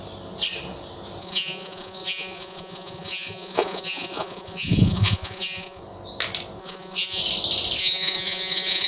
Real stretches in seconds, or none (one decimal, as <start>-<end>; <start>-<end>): 0.0-1.2; 5.8-6.6; 7.2-7.8